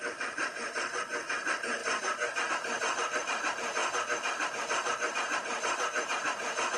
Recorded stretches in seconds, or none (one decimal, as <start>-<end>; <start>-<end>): 1.8-2.5; 3.8-4.6